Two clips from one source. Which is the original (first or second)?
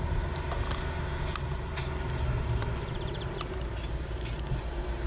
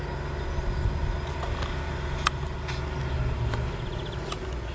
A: second